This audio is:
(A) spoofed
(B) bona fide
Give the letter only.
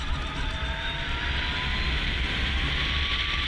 B